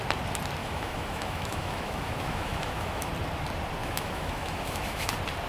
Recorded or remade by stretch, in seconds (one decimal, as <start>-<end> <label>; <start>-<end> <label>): 0.0-0.6 recorded; 0.6-3.1 remade; 3.1-3.8 recorded; 3.8-5.1 remade; 5.1-5.5 recorded